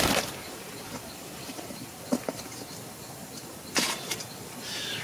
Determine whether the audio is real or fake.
real